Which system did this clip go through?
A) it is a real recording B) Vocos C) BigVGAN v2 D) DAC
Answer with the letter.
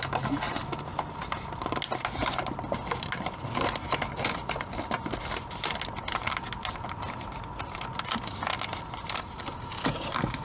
A